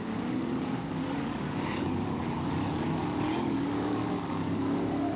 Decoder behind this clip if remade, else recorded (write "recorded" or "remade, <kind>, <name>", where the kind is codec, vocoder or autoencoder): remade, codec, DAC